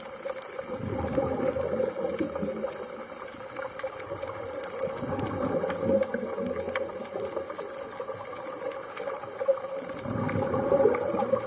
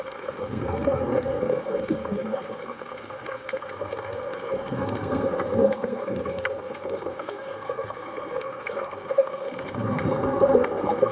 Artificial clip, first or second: second